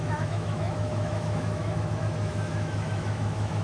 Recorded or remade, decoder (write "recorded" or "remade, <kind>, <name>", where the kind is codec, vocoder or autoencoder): remade, autoencoder, DAC-VAE